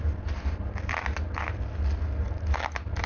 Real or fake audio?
real